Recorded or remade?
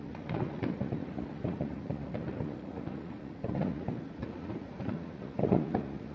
remade